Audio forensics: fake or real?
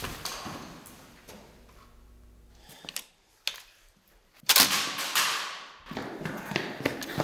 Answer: real